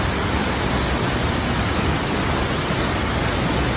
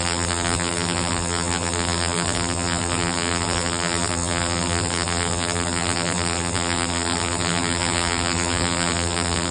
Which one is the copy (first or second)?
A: second